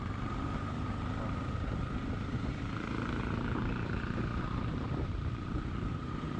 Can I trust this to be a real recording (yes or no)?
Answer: no